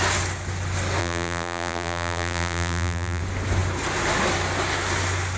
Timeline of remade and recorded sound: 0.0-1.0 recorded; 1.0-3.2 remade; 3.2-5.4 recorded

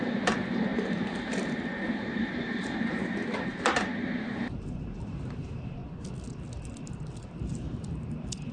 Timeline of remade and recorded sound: 0.0-0.7 remade; 0.7-1.9 recorded; 1.9-5.8 remade; 5.8-7.1 recorded; 7.1-8.5 remade

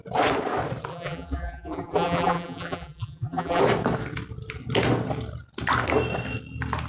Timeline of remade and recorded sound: 0.0-0.9 recorded; 0.9-3.6 remade; 3.6-6.9 recorded

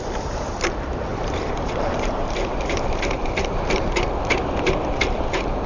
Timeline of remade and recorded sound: 0.0-1.1 recorded; 1.1-3.9 remade; 3.9-5.7 recorded

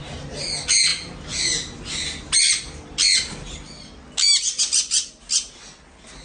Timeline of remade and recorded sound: 0.0-6.2 recorded